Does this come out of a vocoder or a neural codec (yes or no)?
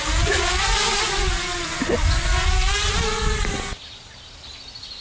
no